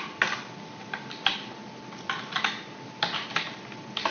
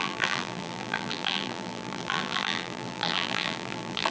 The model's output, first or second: second